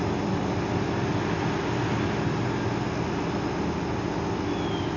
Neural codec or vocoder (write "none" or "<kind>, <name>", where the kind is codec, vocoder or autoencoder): none